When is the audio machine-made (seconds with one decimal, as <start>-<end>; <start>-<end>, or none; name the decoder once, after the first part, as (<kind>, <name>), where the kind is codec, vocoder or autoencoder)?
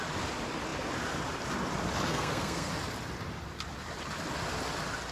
2.1-2.7 (codec, SNAC)